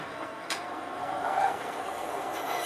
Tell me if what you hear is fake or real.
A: fake